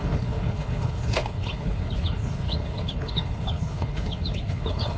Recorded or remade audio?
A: remade